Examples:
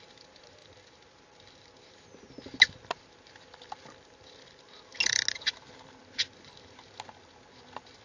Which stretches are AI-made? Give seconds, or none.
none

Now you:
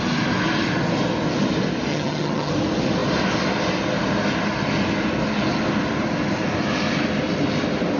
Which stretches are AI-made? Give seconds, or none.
1.9-2.5 (vocoder, HiFi-GAN)

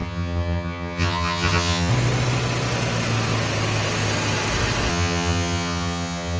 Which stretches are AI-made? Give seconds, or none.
0.0-1.9 (vocoder, HiFi-GAN); 4.9-6.4

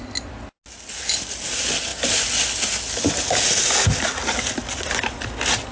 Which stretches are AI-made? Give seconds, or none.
none

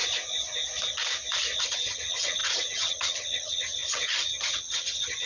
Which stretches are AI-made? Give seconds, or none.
1.6-5.2 (vocoder, HiFi-GAN)

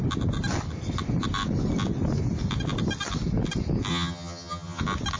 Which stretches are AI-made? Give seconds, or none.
3.9-4.8 (vocoder, HiFi-GAN)